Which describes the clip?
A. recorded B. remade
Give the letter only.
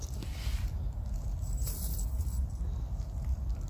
A